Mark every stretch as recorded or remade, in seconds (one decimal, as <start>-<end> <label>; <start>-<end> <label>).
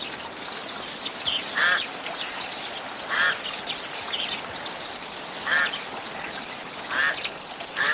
0.0-7.9 recorded